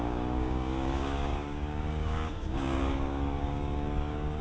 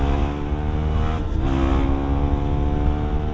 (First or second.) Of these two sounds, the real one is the second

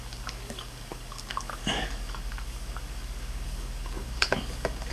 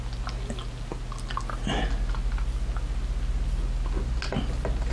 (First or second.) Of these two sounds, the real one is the second